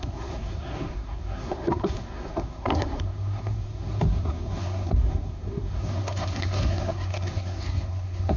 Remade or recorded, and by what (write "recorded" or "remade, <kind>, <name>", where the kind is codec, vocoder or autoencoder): remade, codec, SNAC